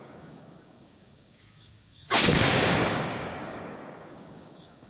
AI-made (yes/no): yes